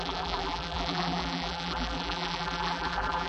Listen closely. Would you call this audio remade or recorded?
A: remade